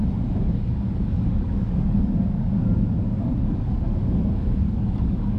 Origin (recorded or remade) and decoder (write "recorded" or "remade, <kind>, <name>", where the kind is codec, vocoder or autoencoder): remade, codec, DAC